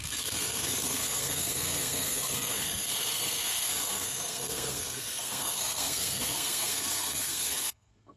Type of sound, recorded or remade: remade